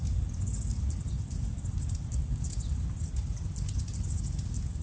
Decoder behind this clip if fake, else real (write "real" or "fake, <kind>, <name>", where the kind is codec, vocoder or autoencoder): real